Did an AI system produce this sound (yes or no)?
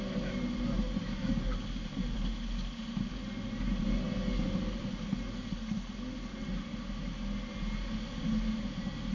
no